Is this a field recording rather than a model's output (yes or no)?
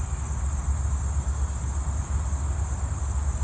yes